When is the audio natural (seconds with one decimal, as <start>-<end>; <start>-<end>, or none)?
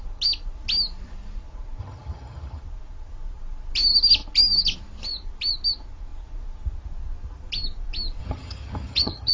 0.0-1.8; 2.6-8.2